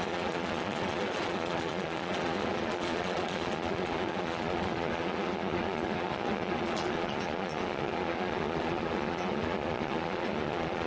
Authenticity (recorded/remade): remade